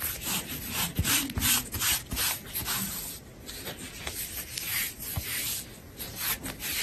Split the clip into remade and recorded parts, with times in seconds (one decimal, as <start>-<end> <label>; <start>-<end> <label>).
0.0-6.8 remade